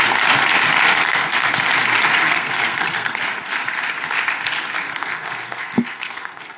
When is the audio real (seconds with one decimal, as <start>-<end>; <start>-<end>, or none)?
0.0-0.9; 1.5-2.2; 3.2-4.9